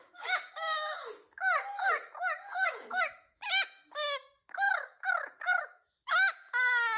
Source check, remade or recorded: remade